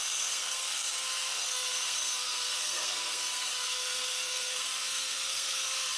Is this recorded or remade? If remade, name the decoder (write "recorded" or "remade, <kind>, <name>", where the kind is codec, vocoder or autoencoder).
remade, codec, SNAC